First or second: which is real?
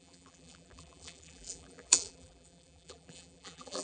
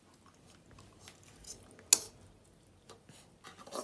second